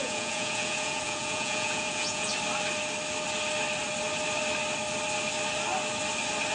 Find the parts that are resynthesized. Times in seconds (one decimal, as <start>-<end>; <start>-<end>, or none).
0.0-2.3